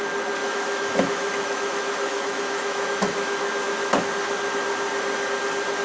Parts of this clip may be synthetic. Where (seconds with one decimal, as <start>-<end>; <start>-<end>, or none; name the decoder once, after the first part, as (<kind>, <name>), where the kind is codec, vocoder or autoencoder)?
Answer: 0.4-3.9 (autoencoder, DAC-VAE)